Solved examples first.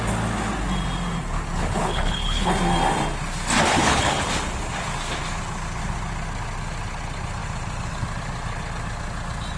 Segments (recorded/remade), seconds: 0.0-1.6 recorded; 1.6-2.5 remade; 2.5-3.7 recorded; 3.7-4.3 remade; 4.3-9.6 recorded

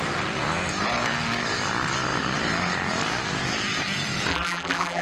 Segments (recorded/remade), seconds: 0.0-4.3 recorded; 4.3-5.0 remade

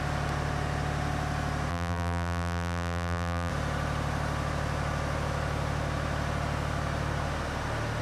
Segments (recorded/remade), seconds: 0.0-1.7 recorded; 1.7-3.5 remade; 3.5-8.0 recorded

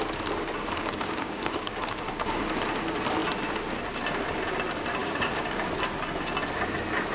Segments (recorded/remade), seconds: 0.0-0.8 recorded; 0.8-2.4 remade; 2.4-5.0 recorded; 5.0-5.7 remade; 5.7-7.1 recorded

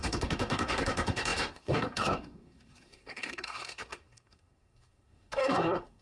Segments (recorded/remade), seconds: 0.0-6.0 remade

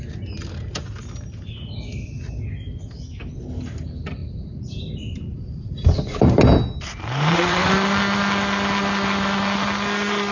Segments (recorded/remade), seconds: 0.0-4.2 recorded; 4.2-7.7 remade; 7.7-10.3 recorded

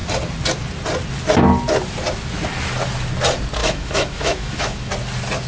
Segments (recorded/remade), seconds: 0.0-3.6 recorded; 3.6-4.9 remade; 4.9-5.5 recorded